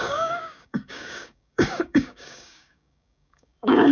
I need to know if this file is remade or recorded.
remade